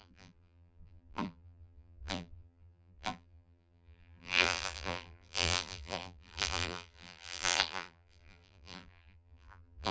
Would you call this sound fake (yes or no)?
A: yes